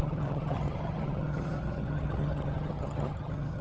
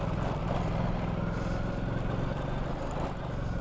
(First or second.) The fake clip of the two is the first